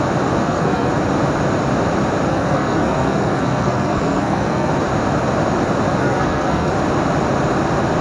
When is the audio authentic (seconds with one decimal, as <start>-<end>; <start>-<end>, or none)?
0.0-0.4; 0.9-2.3; 4.7-6.0; 6.7-8.0